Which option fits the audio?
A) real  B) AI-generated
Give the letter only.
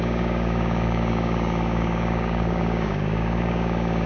B